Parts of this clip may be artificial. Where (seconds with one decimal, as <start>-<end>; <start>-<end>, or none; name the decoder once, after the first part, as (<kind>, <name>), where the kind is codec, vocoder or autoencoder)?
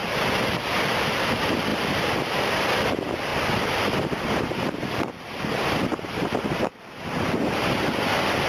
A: 0.0-1.7 (vocoder, BigVGAN v2); 2.3-8.5